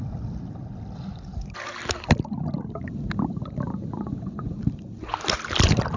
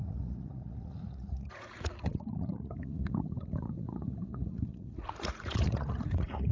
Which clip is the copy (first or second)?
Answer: second